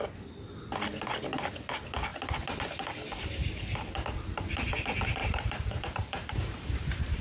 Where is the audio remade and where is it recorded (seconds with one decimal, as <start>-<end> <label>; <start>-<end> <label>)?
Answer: 0.0-5.2 recorded; 5.2-7.2 remade